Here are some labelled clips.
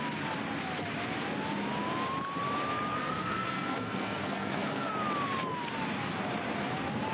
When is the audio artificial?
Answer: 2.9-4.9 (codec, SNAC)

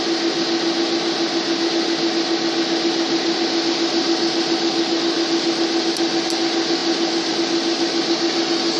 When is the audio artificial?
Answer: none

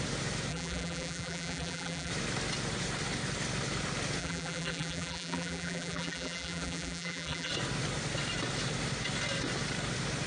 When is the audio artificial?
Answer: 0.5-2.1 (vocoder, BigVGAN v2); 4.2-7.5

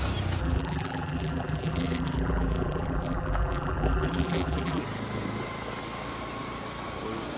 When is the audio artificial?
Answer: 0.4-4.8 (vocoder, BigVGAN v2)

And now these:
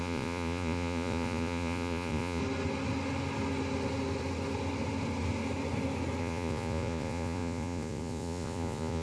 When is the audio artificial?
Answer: 0.0-2.4 (vocoder, Vocos); 6.2-9.0

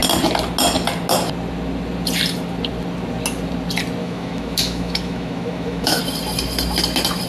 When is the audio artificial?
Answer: 4.0-6.0 (autoencoder, DAC-VAE)